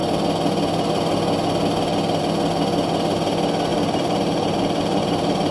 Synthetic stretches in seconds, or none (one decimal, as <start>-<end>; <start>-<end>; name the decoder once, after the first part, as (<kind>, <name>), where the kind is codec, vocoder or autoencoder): 3.7-5.5 (vocoder, BigVGAN v2)